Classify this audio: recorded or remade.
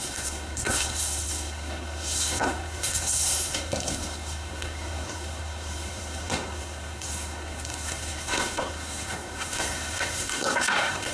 remade